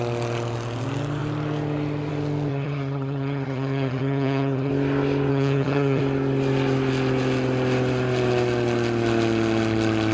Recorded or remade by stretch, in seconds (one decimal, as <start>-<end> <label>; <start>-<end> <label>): 0.0-2.5 recorded; 2.5-4.7 remade; 4.7-5.3 recorded; 5.3-6.0 remade; 6.0-10.1 recorded